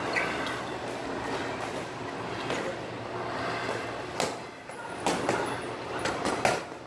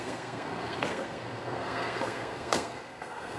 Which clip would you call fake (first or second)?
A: second